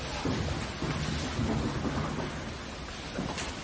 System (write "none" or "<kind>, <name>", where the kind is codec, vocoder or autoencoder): none